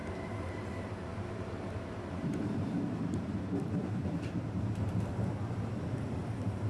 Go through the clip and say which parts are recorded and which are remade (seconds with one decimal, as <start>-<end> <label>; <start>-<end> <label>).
0.0-1.1 recorded; 1.1-5.1 remade; 5.1-6.7 recorded